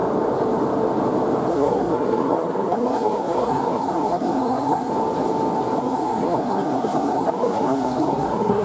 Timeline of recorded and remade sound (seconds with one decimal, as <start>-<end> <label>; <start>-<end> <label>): 0.0-1.5 recorded; 1.5-4.9 remade; 4.9-5.8 recorded; 5.8-8.6 remade